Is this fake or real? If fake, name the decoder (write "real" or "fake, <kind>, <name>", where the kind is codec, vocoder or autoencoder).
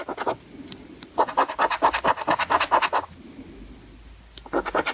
real